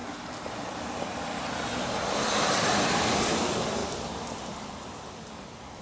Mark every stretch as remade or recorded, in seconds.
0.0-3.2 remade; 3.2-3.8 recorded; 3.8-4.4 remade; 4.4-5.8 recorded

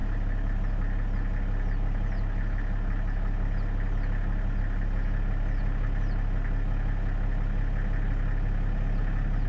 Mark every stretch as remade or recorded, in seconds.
0.0-9.5 recorded

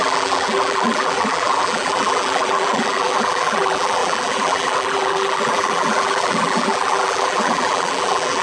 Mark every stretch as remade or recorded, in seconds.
0.0-8.4 remade

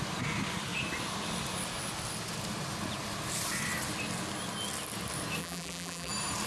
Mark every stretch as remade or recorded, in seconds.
0.0-5.4 recorded; 5.4-6.1 remade; 6.1-6.5 recorded

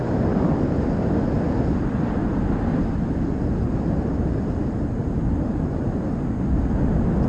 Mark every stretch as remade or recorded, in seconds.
0.0-7.3 recorded

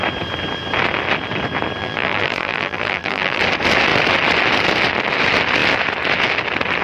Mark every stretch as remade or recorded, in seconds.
0.0-1.8 recorded; 1.8-3.4 remade; 3.4-6.8 recorded

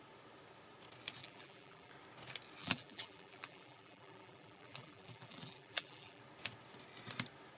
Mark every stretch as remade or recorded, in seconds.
0.0-1.2 recorded; 1.2-1.9 remade; 1.9-2.6 recorded; 2.6-6.2 remade; 6.2-7.6 recorded

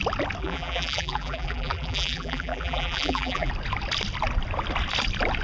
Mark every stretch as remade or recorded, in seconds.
0.0-0.4 recorded; 0.4-3.5 remade; 3.5-5.4 recorded